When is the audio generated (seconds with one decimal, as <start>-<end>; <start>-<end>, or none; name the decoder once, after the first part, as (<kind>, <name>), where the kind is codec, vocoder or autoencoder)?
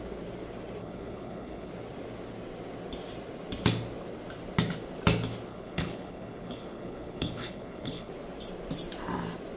0.8-1.7 (codec, HILCodec); 5.5-8.1